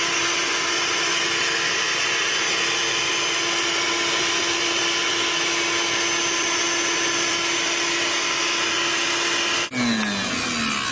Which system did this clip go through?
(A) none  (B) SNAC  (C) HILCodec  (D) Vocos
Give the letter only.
A